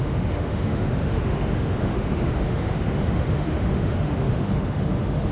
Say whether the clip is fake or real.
fake